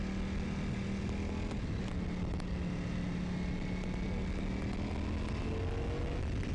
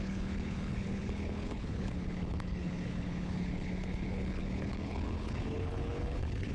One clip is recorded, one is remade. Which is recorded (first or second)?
first